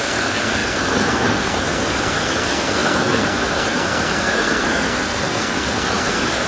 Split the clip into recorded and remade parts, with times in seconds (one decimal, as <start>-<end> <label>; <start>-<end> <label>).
0.0-6.5 remade